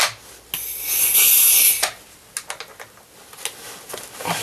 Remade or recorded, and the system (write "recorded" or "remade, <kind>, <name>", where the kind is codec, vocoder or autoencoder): recorded